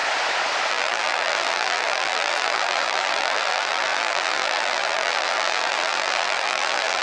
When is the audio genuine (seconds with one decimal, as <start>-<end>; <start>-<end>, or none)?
0.0-0.7